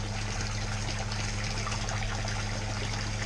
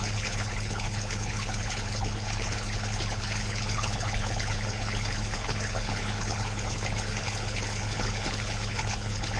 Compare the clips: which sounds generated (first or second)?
second